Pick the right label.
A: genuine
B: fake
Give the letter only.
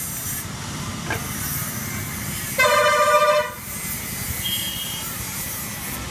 A